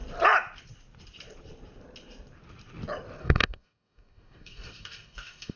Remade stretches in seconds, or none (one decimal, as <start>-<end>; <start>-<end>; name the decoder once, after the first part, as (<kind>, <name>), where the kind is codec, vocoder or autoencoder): 3.2-5.6 (codec, DAC)